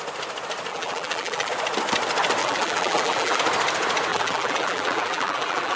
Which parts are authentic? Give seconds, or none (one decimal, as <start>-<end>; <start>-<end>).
0.0-0.7; 1.5-2.4; 3.4-4.1